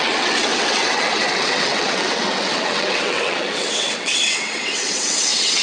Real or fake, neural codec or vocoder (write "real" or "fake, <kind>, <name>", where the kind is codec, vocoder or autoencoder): fake, vocoder, WaveNeXt